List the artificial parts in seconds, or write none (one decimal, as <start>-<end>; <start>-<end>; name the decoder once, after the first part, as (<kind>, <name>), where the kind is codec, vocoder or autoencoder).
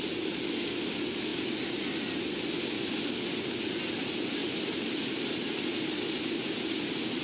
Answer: none